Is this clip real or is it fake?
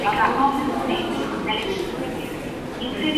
real